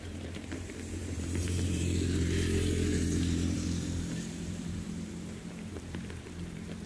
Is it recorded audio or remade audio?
remade